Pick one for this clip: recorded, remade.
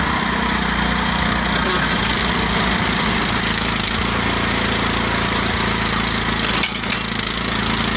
recorded